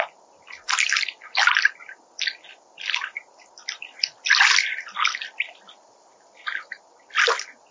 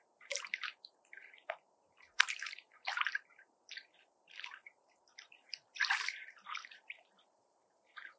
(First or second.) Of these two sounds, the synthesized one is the second